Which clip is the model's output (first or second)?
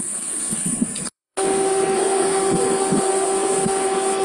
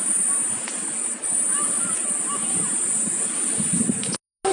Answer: first